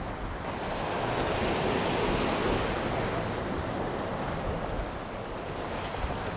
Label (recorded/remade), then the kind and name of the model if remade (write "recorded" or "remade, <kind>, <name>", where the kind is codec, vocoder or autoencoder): recorded